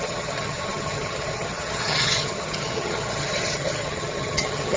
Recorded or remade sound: remade